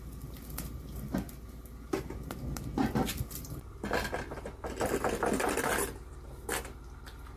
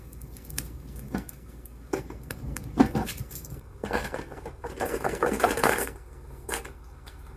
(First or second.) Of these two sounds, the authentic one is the first